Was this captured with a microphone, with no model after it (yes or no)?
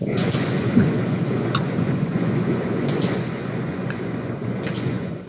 no